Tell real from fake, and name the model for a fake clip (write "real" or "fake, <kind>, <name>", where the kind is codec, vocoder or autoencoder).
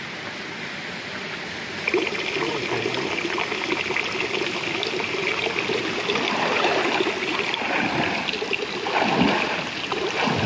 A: real